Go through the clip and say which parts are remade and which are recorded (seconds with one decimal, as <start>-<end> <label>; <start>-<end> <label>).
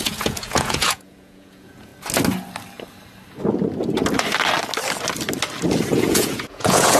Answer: 0.0-1.9 remade; 1.9-6.1 recorded; 6.1-7.0 remade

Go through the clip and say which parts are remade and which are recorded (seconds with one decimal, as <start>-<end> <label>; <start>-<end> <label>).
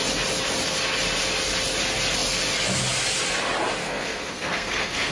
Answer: 0.0-3.8 recorded; 3.8-5.1 remade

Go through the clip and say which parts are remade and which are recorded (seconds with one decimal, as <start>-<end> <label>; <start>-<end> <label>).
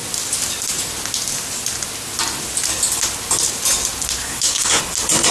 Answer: 0.0-4.2 recorded; 4.2-4.8 remade; 4.8-5.3 recorded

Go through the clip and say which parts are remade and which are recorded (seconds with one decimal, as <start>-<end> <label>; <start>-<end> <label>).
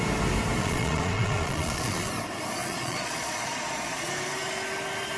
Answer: 0.0-0.6 recorded; 0.6-2.1 remade; 2.1-2.6 recorded; 2.6-4.1 remade; 4.1-5.2 recorded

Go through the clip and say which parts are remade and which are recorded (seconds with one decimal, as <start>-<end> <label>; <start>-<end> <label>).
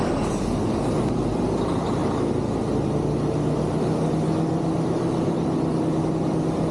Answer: 0.0-2.0 remade; 2.0-6.0 recorded; 6.0-6.7 remade